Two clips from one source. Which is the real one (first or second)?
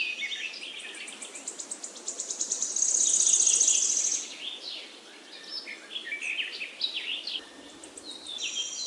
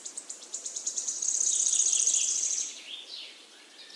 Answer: first